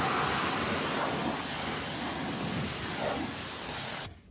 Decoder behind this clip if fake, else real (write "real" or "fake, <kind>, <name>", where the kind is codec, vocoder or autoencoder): real